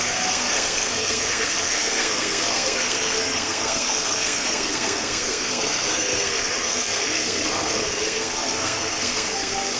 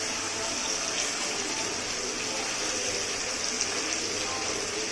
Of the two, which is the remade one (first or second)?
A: first